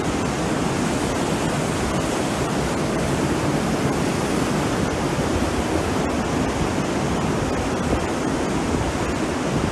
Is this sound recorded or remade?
recorded